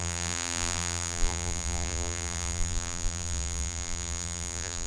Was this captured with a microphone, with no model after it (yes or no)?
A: no